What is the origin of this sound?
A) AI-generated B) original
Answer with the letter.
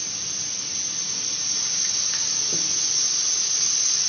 B